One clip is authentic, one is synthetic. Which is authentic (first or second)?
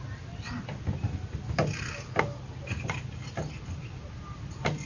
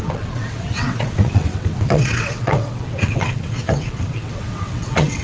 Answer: first